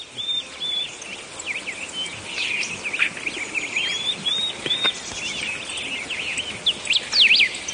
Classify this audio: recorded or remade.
recorded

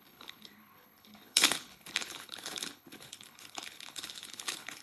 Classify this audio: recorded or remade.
remade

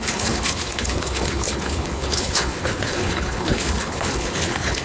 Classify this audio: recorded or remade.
remade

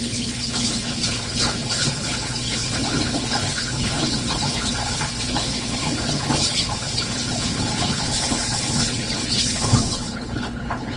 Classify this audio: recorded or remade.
remade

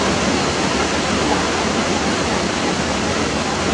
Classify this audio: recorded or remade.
recorded